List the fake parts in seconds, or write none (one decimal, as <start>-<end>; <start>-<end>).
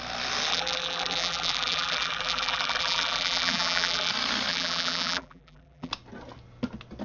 0.5-4.1; 4.5-5.9